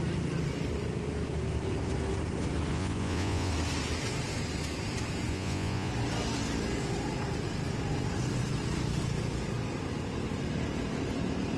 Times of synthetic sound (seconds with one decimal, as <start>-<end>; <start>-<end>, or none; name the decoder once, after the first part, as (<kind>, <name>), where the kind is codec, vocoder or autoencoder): 2.7-3.5 (vocoder, Vocos); 5.3-5.9